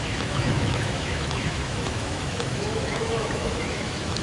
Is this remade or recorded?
remade